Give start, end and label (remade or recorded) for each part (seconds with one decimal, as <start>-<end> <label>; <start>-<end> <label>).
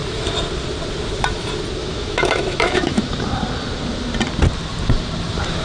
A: 0.0-1.8 recorded; 1.8-3.1 remade; 3.1-5.6 recorded